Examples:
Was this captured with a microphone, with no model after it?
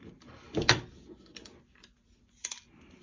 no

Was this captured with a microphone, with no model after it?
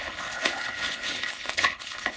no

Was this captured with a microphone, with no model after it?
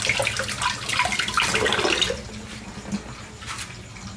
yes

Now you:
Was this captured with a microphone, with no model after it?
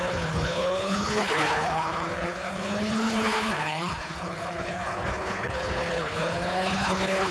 no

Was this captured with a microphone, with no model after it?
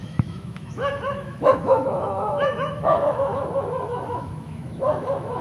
no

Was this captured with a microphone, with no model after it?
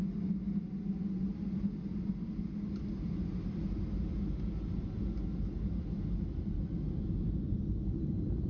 yes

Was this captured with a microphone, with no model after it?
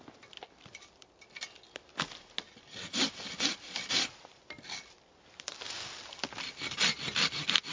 yes